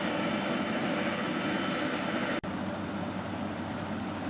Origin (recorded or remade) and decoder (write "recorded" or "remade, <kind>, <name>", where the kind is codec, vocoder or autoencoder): recorded